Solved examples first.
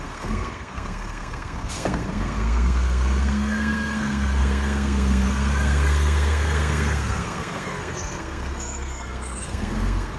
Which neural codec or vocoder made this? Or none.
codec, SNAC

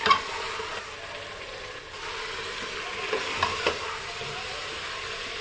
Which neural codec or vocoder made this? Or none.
none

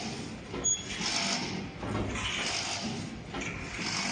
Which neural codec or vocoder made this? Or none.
none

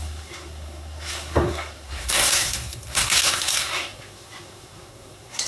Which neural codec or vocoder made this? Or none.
codec, SNAC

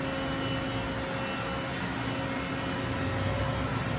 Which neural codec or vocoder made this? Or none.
none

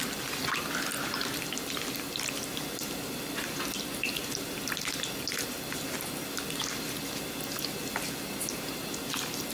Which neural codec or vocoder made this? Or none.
none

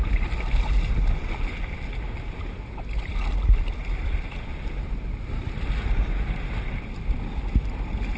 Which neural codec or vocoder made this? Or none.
none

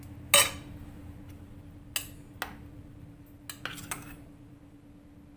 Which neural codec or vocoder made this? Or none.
none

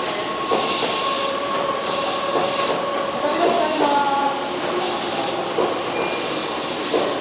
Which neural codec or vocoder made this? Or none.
none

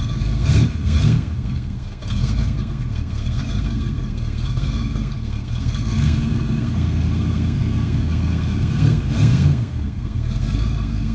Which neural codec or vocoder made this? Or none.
codec, SNAC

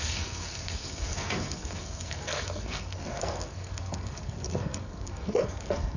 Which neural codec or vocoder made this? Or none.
codec, SNAC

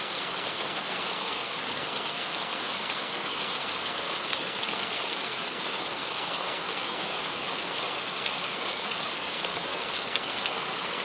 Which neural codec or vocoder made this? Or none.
codec, SNAC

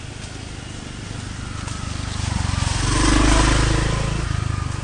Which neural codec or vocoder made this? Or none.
none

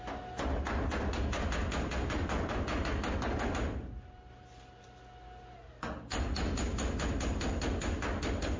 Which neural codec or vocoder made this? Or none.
none